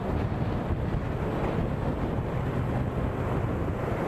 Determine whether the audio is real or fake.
real